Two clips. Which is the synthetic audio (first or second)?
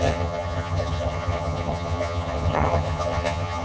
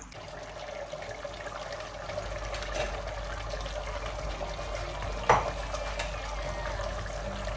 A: first